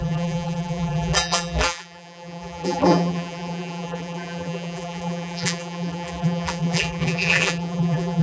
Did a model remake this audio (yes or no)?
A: yes